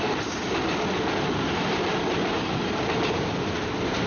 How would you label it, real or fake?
real